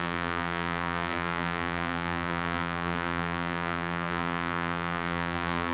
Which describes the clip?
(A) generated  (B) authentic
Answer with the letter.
A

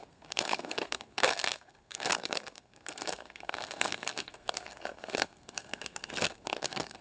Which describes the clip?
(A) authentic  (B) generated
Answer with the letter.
B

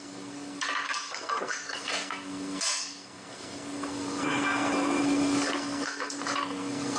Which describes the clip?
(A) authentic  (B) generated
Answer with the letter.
B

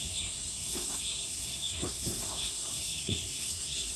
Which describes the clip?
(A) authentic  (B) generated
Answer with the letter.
B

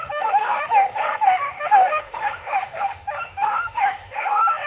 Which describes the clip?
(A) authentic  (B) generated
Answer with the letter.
B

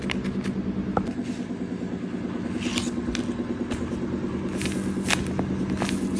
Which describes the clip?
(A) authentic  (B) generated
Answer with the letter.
A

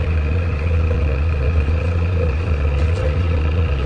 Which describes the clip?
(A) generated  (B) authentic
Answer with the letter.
A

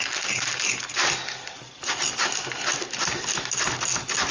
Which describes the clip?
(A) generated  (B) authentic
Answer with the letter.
B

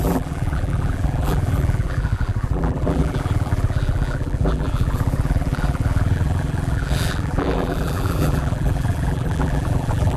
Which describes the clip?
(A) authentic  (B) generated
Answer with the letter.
B